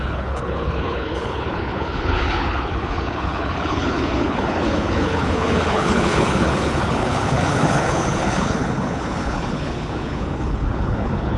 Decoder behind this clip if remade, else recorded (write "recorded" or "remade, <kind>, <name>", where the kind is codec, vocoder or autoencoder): remade, codec, HILCodec